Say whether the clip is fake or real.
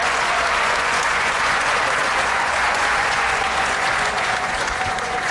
fake